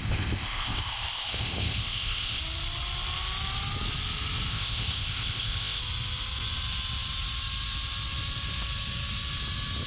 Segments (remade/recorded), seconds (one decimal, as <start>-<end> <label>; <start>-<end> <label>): 0.0-2.4 remade; 2.4-4.5 recorded; 4.5-5.8 remade; 5.8-9.9 recorded